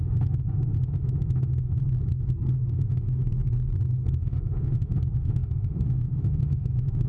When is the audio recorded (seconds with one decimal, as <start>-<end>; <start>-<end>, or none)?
1.8-2.7; 3.3-4.1